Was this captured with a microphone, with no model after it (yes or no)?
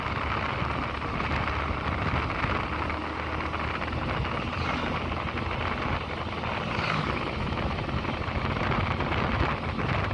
yes